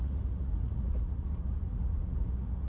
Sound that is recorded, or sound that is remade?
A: remade